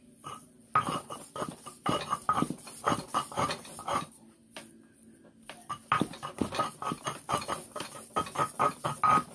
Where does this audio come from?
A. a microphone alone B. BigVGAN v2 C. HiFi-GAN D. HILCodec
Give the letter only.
A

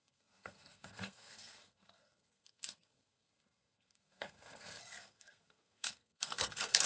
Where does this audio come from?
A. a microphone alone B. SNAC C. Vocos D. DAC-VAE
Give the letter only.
B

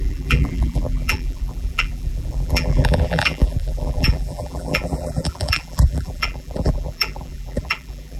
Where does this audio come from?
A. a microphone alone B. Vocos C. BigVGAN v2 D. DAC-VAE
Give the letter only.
C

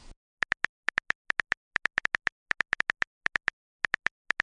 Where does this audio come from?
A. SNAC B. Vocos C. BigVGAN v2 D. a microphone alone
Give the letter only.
D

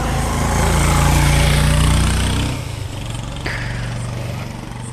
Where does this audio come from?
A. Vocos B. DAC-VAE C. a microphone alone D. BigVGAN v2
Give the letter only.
C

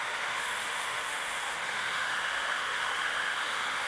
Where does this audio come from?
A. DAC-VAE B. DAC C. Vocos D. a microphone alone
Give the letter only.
A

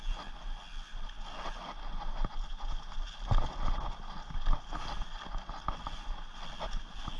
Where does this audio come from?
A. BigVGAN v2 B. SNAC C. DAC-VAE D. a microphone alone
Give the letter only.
D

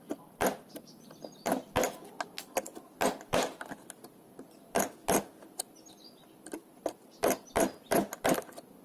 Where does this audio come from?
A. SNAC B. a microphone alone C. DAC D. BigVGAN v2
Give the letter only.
B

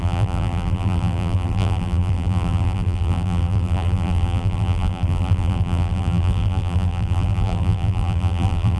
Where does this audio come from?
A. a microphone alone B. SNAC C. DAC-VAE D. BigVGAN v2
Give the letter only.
D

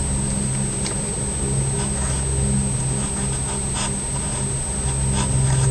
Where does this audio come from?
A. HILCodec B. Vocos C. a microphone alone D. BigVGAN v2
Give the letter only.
C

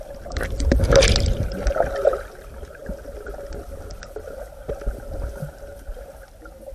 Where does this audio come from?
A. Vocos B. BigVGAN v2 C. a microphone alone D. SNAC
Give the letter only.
C